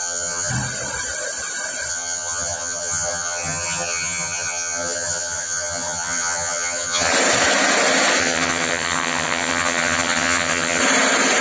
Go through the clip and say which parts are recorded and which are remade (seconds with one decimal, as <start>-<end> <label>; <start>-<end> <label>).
0.0-0.5 remade; 0.5-1.9 recorded; 1.9-7.1 remade; 7.1-8.2 recorded; 8.2-10.8 remade; 10.8-11.4 recorded